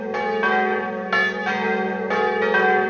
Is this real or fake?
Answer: real